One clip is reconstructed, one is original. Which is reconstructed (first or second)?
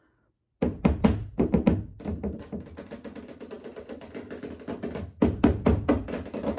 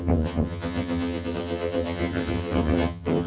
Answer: second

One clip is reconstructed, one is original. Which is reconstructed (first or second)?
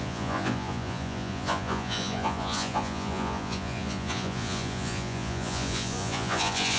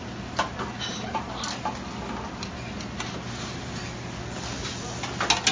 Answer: first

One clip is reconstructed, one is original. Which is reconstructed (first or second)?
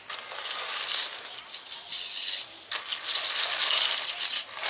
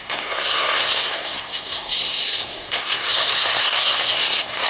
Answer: second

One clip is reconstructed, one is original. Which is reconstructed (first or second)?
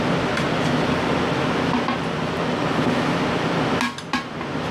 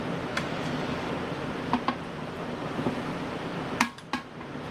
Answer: second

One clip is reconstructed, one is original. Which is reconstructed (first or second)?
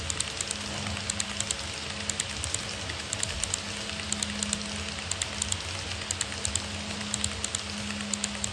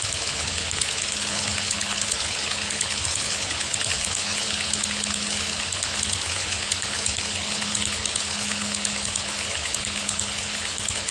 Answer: second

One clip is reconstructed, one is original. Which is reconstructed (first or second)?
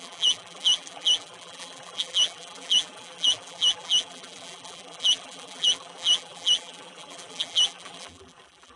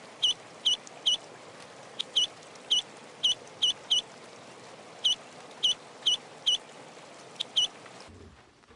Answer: first